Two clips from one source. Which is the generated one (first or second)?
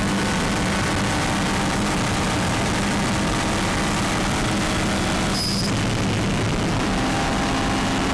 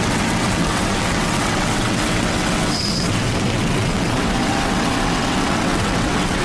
second